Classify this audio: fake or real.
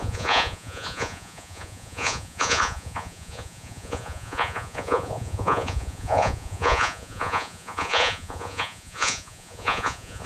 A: fake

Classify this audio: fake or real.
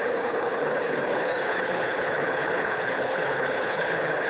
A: fake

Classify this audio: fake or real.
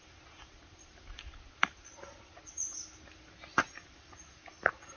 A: real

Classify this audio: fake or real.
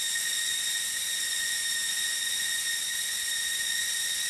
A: fake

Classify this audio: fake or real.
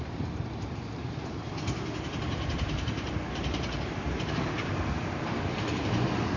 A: fake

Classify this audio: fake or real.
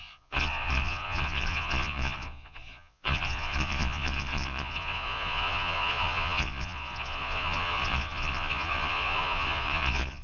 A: fake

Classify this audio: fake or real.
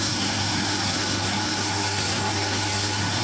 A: fake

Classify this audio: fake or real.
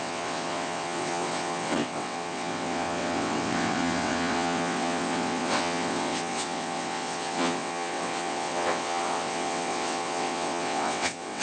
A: fake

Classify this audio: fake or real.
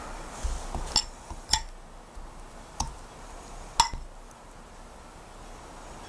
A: real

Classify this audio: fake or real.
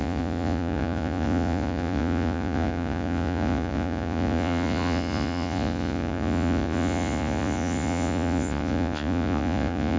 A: fake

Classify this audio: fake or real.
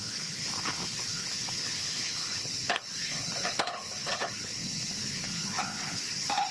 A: fake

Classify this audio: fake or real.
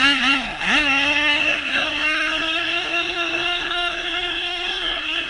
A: fake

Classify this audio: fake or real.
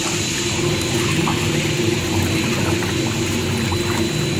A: real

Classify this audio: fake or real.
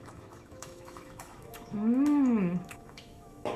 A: fake